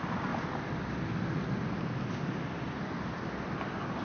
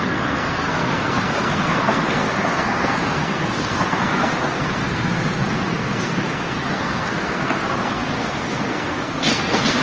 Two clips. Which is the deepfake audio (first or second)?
second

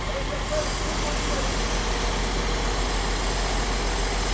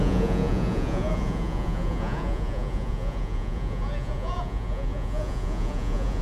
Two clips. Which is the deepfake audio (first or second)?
second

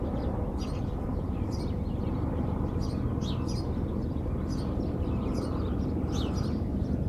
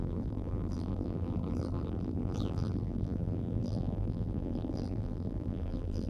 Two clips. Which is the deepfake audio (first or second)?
second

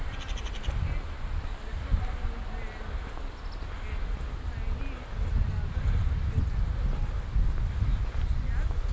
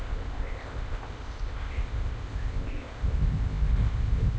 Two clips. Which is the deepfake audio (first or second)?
second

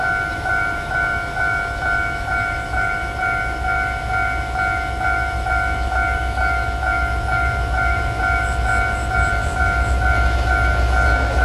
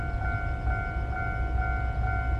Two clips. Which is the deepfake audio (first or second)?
first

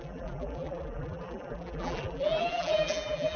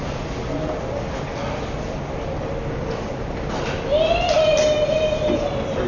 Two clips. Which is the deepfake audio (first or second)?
first